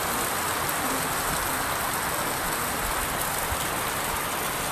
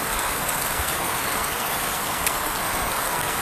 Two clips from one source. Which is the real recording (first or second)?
first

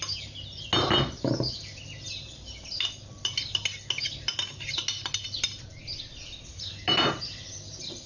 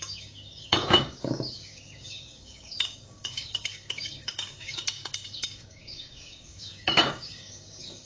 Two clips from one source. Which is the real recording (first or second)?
first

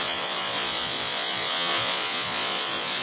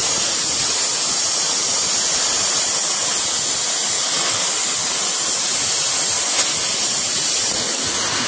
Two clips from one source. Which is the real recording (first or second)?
second